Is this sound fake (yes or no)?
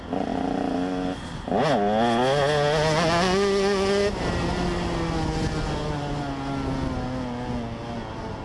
no